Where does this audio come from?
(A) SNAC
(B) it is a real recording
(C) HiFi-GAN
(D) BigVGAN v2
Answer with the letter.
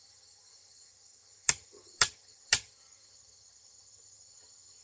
C